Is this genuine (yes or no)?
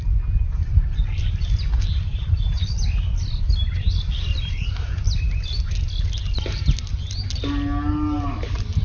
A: yes